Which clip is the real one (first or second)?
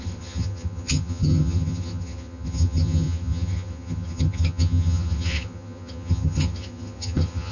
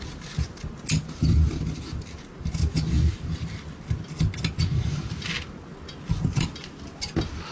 second